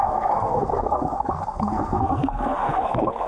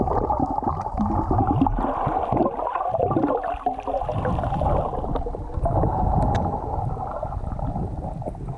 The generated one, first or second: first